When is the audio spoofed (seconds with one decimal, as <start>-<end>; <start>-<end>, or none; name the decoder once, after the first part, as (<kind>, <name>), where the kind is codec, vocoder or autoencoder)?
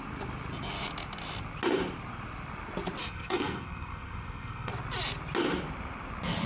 3.0-4.7 (codec, SNAC)